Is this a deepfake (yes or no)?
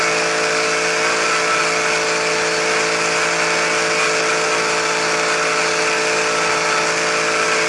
no